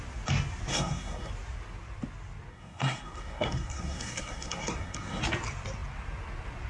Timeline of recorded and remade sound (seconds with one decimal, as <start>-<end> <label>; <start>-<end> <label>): 0.0-0.7 recorded; 0.7-1.3 remade; 1.3-2.5 recorded; 2.5-5.2 remade; 5.2-6.7 recorded